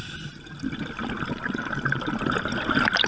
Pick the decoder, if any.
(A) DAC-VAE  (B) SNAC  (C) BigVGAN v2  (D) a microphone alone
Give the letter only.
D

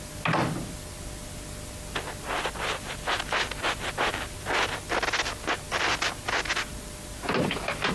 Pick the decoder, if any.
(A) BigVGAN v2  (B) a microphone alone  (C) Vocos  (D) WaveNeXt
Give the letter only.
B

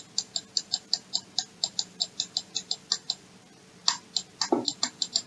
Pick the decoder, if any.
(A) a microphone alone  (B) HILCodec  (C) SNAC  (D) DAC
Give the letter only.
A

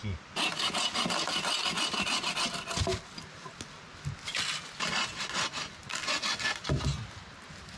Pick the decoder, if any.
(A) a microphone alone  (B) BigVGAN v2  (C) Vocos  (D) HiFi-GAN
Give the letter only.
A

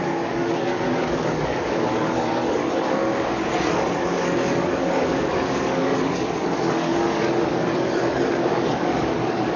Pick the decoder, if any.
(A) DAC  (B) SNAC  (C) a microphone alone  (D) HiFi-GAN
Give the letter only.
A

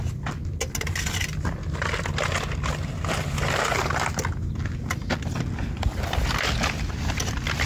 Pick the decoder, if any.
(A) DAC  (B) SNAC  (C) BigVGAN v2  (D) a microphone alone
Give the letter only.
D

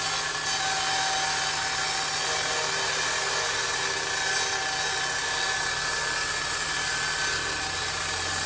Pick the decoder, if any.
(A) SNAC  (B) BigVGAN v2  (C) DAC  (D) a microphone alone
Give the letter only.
D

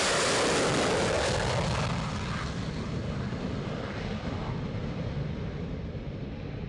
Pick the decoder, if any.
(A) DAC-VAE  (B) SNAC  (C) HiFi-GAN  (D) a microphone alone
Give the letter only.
D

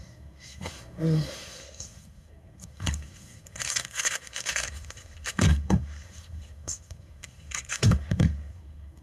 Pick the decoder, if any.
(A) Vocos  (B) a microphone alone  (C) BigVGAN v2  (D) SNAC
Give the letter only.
D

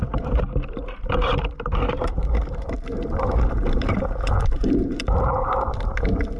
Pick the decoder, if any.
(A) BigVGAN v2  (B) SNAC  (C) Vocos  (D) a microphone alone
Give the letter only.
A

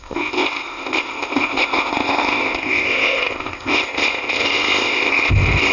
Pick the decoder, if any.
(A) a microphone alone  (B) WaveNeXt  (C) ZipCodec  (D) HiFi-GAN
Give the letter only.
C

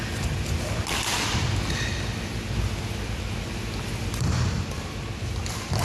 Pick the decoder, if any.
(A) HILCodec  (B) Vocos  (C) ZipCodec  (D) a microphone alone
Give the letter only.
D